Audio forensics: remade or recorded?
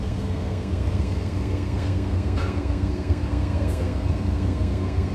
remade